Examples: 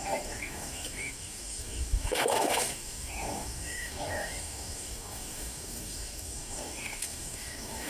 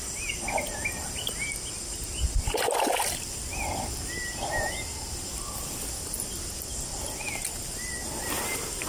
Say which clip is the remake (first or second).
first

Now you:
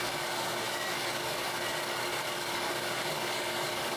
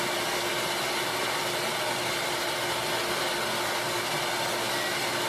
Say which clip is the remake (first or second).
first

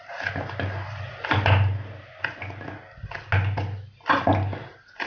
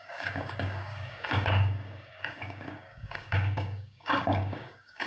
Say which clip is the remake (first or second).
second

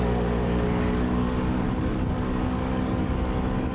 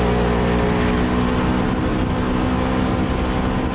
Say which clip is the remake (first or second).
first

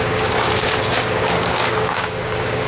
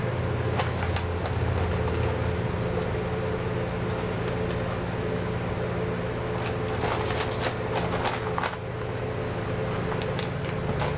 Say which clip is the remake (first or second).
first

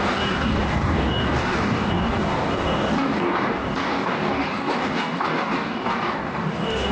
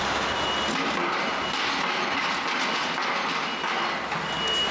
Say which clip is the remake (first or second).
first